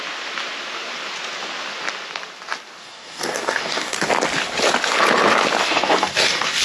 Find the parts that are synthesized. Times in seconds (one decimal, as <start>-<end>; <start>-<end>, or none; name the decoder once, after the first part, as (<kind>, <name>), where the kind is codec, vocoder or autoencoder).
2.8-4.1 (codec, DAC); 5.6-6.6